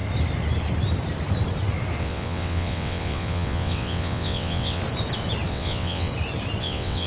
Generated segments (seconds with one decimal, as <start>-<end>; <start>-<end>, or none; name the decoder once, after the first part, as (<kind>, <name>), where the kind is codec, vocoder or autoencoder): 2.0-4.8 (vocoder, WaveNeXt); 5.5-6.1; 6.6-7.1